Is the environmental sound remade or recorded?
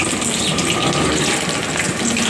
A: recorded